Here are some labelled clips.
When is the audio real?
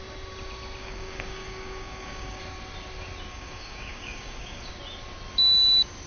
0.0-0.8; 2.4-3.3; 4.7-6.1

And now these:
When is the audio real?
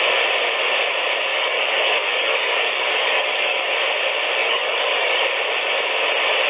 0.0-1.3; 3.7-4.4; 5.2-6.5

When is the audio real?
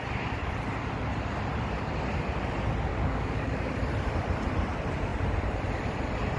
0.0-2.9; 3.7-6.4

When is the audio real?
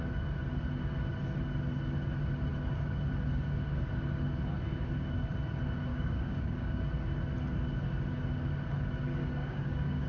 0.0-5.9; 6.8-9.2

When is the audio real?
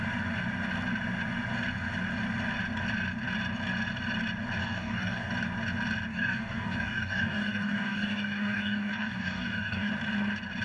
0.0-4.6; 5.3-6.1; 9.9-10.6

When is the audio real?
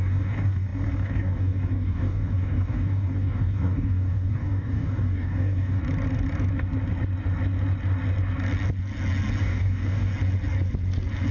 5.8-9.4; 10.1-11.3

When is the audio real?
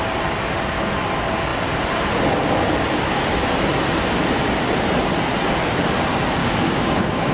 0.0-6.4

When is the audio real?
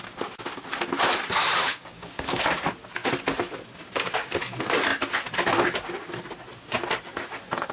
0.0-1.6; 2.4-7.7